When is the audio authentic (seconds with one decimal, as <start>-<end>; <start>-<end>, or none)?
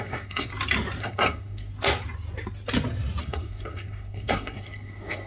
0.5-1.0; 1.7-3.2